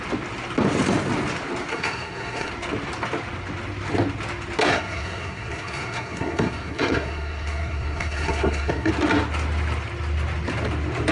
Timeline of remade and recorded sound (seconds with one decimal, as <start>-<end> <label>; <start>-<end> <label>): 0.0-1.7 recorded; 1.7-2.5 remade; 2.5-4.7 recorded; 4.7-8.9 remade; 8.9-11.1 recorded